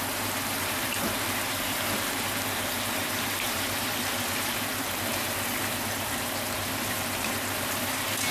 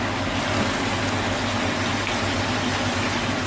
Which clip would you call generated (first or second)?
first